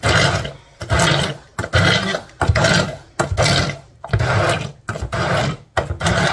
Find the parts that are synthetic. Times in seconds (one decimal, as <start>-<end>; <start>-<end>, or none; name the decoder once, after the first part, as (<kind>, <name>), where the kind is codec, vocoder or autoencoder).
none

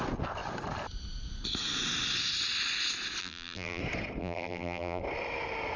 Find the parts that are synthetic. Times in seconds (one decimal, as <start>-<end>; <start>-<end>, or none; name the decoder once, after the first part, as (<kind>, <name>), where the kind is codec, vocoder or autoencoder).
3.2-3.8 (vocoder, BigVGAN v2); 4.2-5.0

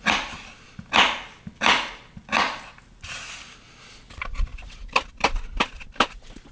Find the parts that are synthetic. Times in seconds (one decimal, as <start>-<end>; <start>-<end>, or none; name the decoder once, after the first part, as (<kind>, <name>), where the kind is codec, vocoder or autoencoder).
none

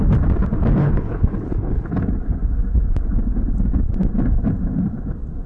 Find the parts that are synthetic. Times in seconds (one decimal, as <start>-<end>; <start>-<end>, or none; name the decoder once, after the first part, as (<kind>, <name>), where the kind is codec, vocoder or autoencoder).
0.8-1.9 (codec, HILCodec)

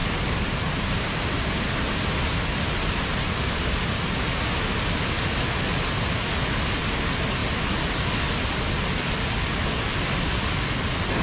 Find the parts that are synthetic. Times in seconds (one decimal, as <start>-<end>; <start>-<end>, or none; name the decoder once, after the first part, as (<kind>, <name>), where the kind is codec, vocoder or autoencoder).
0.0-4.2 (vocoder, BigVGAN v2)

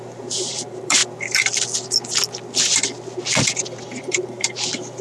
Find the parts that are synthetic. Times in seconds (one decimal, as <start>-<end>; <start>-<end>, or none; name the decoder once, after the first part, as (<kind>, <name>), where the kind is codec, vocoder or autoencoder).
0.0-1.0 (vocoder, BigVGAN v2); 4.0-5.0